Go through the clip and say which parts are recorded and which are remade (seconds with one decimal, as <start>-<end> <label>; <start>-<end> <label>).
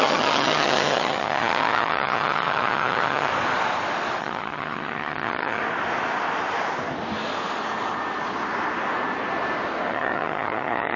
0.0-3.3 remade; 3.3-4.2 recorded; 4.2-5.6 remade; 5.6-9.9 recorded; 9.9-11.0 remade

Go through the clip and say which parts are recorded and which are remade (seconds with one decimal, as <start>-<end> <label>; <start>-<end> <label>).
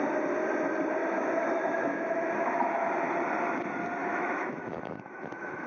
0.0-1.0 recorded; 1.0-2.6 remade; 2.6-4.0 recorded; 4.0-5.7 remade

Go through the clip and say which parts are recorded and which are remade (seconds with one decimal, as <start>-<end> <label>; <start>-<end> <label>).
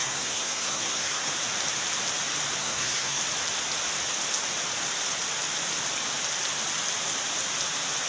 0.0-1.3 remade; 1.3-2.6 recorded; 2.6-3.2 remade; 3.2-8.1 recorded